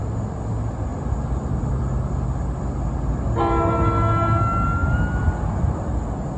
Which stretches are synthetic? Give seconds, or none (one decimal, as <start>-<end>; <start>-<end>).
none